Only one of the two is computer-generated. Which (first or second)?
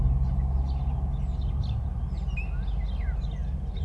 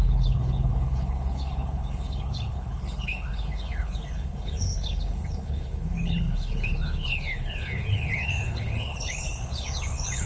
second